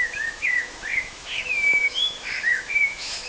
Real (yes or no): no